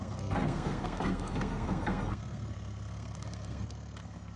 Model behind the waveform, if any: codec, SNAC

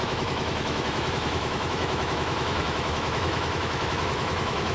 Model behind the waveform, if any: autoencoder, DAC-VAE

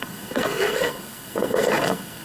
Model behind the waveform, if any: codec, SNAC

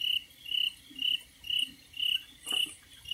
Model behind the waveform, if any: vocoder, BigVGAN v2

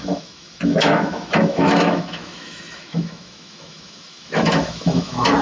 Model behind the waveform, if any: autoencoder, DAC-VAE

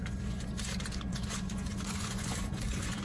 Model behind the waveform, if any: vocoder, Vocos